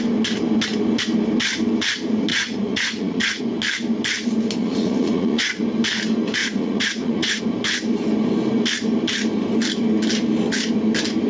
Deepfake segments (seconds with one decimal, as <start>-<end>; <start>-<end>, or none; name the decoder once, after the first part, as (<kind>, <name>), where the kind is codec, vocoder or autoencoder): 2.3-3.4 (vocoder, Vocos); 4.6-5.6; 6.4-7.4